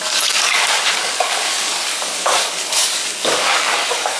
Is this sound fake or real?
fake